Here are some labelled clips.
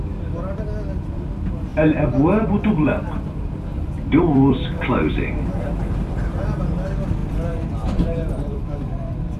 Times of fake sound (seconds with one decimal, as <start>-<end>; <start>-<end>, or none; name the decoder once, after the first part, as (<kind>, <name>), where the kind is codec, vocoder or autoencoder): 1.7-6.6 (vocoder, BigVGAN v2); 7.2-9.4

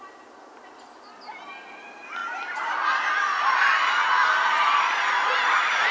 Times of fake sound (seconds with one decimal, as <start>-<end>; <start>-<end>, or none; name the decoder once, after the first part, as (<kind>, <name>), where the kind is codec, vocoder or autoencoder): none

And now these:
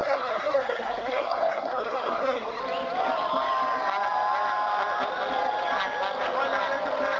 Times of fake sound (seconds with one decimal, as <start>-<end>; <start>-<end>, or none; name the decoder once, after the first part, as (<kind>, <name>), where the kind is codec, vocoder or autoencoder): 0.0-2.6 (codec, SNAC)